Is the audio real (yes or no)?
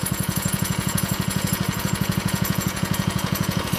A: no